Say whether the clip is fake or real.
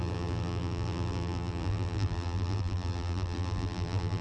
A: fake